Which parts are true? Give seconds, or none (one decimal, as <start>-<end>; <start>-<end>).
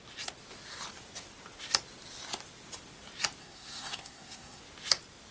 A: 0.0-3.4; 4.6-5.3